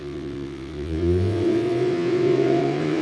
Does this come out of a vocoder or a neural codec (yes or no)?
yes